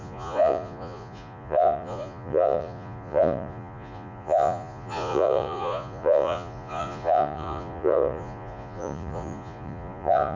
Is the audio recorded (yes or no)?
no